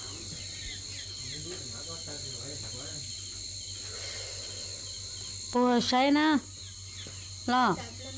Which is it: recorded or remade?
recorded